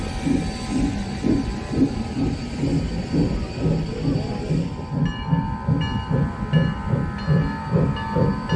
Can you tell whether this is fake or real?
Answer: real